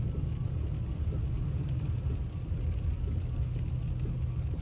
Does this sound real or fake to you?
real